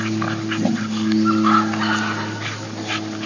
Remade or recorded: recorded